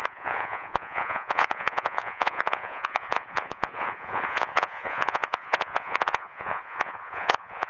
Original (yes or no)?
no